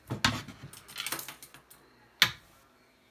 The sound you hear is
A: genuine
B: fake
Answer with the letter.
A